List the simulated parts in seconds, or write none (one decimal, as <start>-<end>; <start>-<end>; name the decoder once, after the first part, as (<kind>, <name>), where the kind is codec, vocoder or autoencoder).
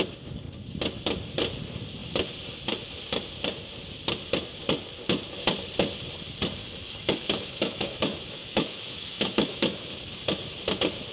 6.6-10.0 (autoencoder, DAC-VAE)